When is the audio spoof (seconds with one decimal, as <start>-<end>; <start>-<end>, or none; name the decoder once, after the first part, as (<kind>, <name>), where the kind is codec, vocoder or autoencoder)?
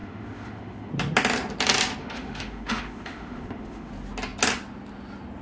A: 0.0-0.9 (autoencoder, DAC-VAE); 2.0-3.9